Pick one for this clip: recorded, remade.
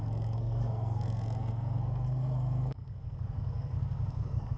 remade